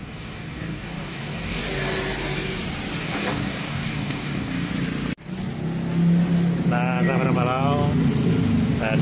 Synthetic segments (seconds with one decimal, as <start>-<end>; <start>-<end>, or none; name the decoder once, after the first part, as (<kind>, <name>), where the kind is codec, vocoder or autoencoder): 0.0-1.6 (codec, DAC); 3.0-4.7